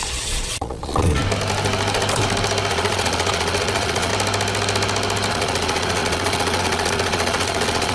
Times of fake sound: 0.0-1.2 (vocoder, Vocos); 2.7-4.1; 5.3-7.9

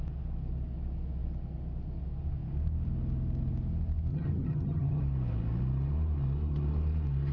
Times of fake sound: 4.1-5.0 (vocoder, HiFi-GAN)

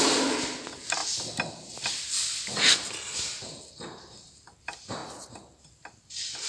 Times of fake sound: none